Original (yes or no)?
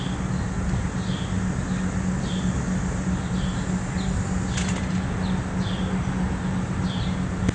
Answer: yes